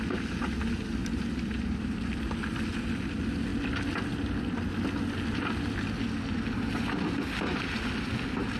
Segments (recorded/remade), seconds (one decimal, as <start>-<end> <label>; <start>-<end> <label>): 0.0-1.0 recorded; 1.0-2.2 remade; 2.2-8.6 recorded